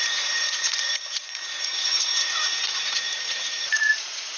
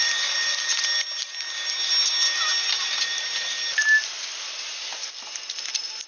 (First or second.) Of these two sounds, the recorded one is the second